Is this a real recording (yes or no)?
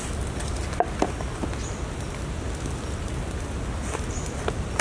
yes